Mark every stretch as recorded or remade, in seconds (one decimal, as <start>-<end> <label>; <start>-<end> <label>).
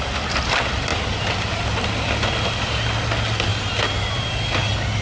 0.0-3.5 remade; 3.5-4.3 recorded; 4.3-5.0 remade